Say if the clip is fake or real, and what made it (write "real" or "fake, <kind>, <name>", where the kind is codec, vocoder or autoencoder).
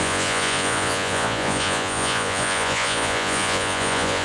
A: fake, vocoder, Vocos